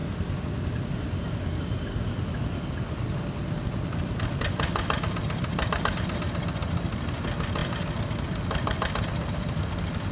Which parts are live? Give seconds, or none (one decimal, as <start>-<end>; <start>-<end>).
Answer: 0.0-10.1